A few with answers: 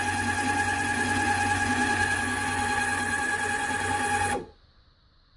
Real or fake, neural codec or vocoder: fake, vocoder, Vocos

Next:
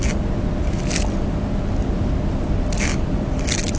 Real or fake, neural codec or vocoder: real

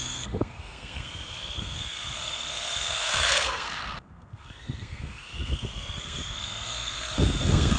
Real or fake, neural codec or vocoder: fake, codec, SNAC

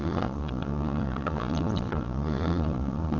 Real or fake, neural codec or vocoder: fake, vocoder, Vocos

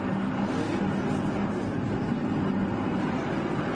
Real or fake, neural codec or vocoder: real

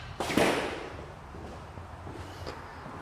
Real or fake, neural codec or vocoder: fake, vocoder, BigVGAN v2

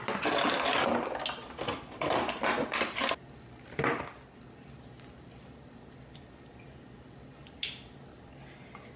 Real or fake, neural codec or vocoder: real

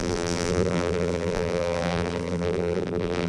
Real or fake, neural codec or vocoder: fake, vocoder, BigVGAN v2